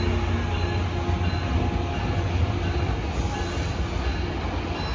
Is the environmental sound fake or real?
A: real